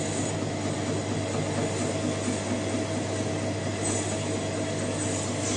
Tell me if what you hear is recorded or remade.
recorded